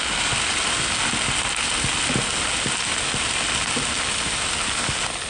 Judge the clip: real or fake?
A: real